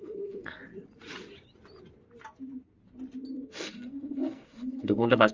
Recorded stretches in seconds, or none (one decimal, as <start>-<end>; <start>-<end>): 0.6-3.3

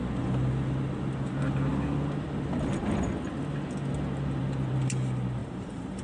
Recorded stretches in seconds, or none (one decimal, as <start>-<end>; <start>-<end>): 0.0-5.4

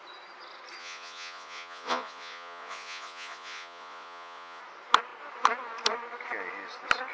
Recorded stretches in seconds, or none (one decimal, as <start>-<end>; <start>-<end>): 0.0-0.8; 4.6-7.1

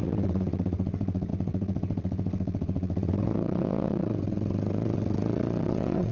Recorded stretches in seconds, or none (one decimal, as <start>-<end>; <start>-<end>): none

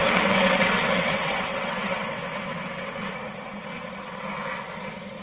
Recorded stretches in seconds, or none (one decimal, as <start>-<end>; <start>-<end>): 3.1-5.2

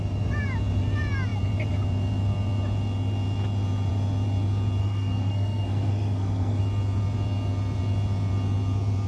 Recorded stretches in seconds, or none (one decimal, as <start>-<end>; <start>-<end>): 0.0-4.8; 6.6-9.1

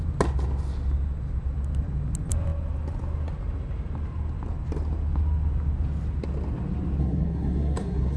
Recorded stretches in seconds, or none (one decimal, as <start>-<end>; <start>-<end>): 0.0-7.0

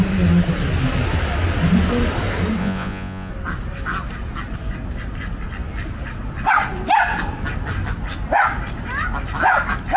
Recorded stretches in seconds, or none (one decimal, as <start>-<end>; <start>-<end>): 0.0-2.6; 3.3-10.0